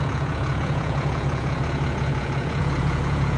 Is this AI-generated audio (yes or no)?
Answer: yes